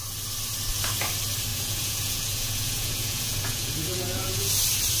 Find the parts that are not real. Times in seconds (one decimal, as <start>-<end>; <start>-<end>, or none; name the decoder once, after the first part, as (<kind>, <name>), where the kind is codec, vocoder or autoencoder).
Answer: 1.5-4.5 (vocoder, Vocos)